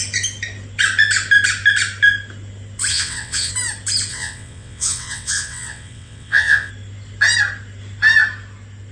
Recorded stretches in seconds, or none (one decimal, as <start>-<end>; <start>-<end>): 0.0-2.9; 3.5-4.1; 6.7-8.9